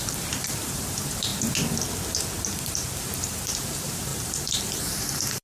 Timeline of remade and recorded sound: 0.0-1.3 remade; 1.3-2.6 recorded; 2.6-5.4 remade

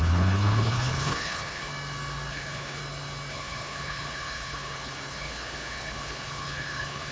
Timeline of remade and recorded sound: 0.0-1.7 remade; 1.7-2.3 recorded; 2.3-2.8 remade; 2.8-3.3 recorded; 3.3-7.1 remade

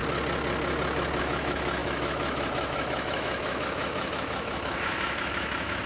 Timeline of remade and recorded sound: 0.0-1.2 recorded; 1.2-5.9 remade

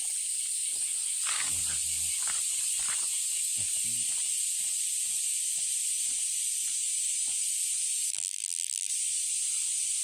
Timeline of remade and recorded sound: 0.0-8.1 recorded; 8.1-8.9 remade; 8.9-10.0 recorded

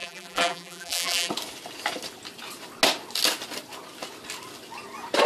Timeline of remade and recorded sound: 0.0-1.3 remade; 1.3-5.3 recorded

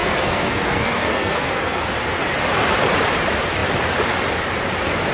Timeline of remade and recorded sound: 0.0-1.8 remade; 1.8-5.1 recorded